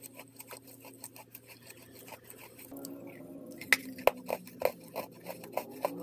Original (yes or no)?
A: yes